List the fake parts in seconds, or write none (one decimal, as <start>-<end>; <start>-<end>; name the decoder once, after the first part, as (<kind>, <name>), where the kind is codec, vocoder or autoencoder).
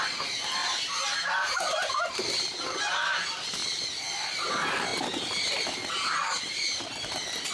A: 0.0-3.6 (vocoder, BigVGAN v2); 4.5-4.9; 5.9-7.5